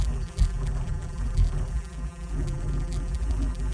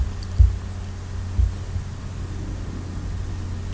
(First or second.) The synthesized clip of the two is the first